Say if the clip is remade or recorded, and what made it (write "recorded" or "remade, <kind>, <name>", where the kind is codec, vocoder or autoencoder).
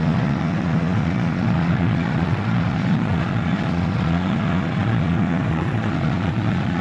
remade, vocoder, Vocos